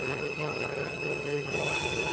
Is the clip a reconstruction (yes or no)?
yes